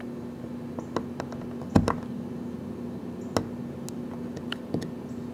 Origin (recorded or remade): recorded